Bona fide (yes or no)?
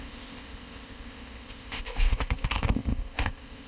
no